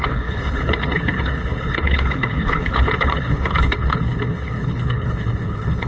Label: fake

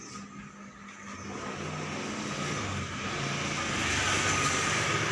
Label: real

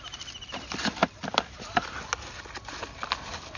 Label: real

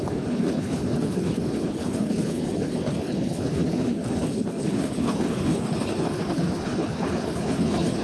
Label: fake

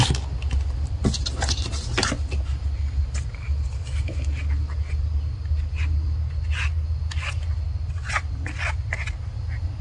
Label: real